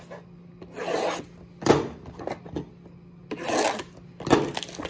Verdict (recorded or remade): recorded